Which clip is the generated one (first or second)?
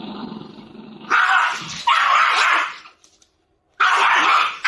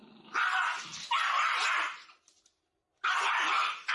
first